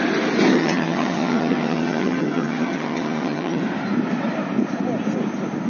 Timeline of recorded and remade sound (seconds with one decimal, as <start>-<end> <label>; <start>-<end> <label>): 0.0-0.5 recorded; 0.5-3.6 remade; 3.6-5.7 recorded